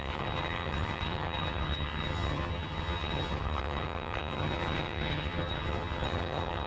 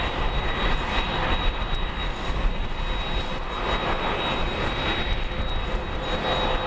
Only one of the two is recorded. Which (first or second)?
second